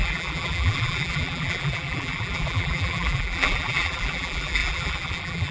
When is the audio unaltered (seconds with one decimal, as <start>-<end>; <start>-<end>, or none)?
none